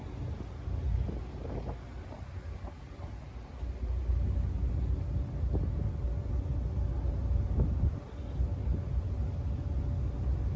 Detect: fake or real real